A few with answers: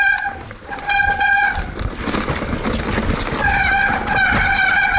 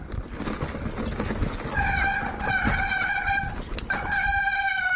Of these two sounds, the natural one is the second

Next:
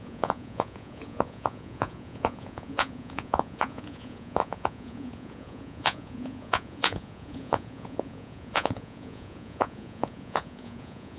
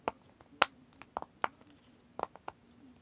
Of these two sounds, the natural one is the second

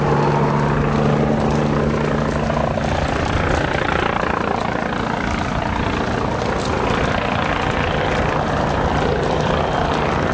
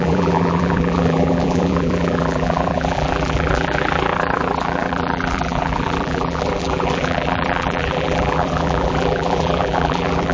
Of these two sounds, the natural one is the first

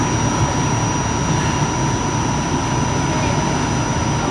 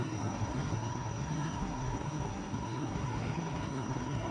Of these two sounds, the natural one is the first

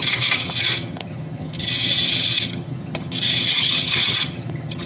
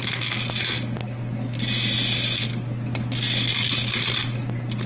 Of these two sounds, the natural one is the second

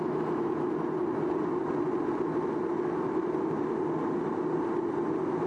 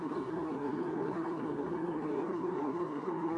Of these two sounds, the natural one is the first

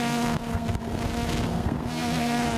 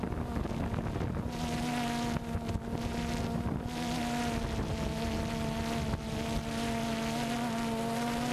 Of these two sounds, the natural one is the second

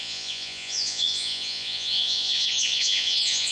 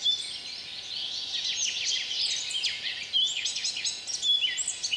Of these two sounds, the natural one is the second